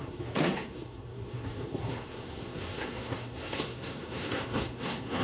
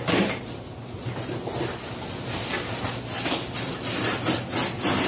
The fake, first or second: first